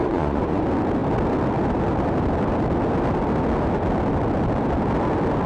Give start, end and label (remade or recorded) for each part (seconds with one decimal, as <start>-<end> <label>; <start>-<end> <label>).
0.0-0.6 remade; 0.6-5.5 recorded

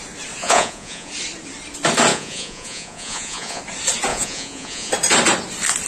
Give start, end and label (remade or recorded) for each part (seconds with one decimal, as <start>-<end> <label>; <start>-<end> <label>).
0.0-0.4 recorded; 0.4-1.1 remade; 1.1-2.1 recorded; 2.1-3.6 remade; 3.6-4.1 recorded; 4.1-4.9 remade; 4.9-5.9 recorded

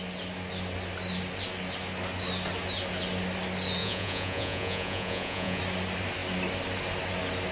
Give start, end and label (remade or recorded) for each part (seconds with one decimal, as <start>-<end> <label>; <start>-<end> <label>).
0.0-3.8 recorded; 3.8-5.6 remade; 5.6-7.5 recorded

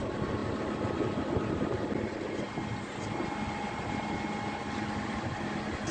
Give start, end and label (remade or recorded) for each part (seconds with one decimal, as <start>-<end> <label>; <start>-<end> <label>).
0.0-5.9 recorded